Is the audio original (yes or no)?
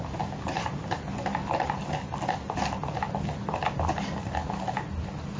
yes